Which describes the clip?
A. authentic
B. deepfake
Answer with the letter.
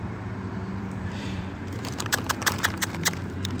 B